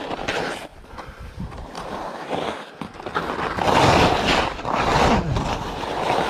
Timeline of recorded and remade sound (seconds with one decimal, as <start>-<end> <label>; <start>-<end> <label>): 0.0-0.7 recorded; 0.7-2.3 remade; 2.3-6.3 recorded